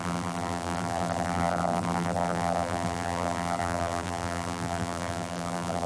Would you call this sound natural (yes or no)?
no